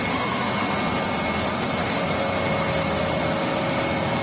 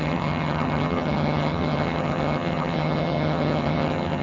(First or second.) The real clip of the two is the first